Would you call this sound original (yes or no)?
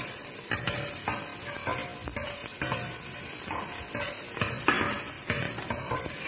yes